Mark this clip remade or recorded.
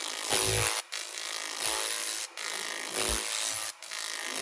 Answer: recorded